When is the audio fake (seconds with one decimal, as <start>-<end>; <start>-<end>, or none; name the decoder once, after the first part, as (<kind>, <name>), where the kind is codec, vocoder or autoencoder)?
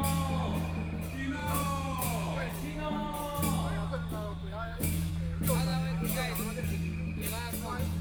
1.4-2.5 (autoencoder, DAC-VAE); 4.4-5.1